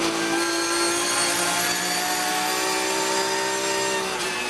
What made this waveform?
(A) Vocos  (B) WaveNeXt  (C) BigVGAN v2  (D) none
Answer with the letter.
D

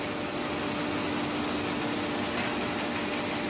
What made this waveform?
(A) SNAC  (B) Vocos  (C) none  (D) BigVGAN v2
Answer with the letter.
C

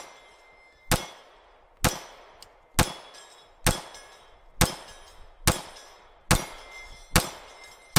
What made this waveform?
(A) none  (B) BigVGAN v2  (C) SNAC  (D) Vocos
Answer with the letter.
A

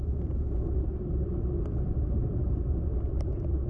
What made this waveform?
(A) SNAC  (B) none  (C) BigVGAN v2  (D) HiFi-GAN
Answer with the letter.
C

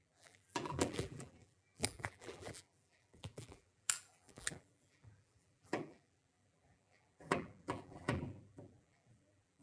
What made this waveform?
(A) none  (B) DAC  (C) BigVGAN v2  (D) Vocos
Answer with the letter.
C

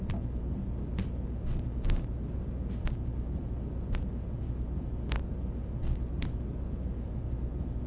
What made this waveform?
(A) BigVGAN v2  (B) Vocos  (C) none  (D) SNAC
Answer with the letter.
C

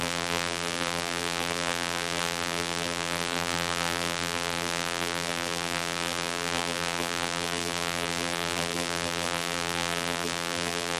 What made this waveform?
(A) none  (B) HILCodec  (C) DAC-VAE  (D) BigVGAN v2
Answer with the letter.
D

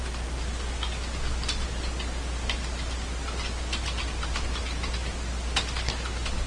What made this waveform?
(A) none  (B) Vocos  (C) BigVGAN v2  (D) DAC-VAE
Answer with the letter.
A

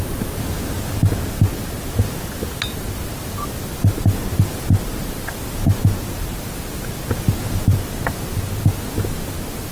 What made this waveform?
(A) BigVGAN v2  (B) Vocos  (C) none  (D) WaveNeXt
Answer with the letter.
C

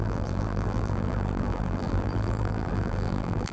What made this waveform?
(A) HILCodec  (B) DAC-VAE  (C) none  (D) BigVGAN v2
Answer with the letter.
D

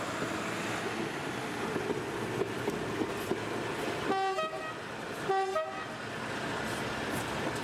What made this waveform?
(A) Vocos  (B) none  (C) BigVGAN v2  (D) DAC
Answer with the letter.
B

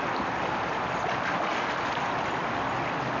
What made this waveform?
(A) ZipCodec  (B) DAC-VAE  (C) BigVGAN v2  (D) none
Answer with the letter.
D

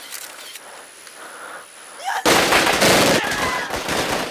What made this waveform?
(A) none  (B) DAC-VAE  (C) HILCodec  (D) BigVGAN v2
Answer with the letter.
A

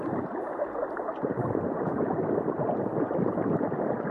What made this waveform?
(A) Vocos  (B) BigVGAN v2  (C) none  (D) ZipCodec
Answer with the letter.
C